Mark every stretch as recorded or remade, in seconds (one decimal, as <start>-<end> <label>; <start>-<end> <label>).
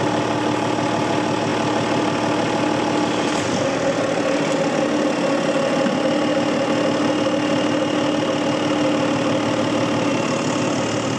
0.0-11.2 recorded